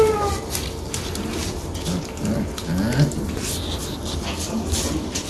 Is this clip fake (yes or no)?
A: no